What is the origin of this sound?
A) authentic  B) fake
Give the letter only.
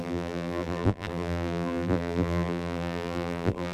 B